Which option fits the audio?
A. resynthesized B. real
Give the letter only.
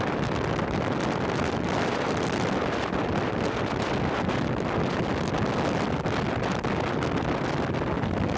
B